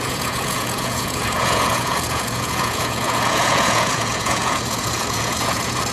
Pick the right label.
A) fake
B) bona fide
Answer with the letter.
A